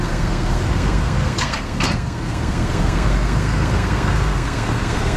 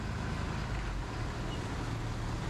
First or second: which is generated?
first